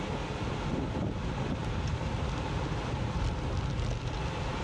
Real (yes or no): yes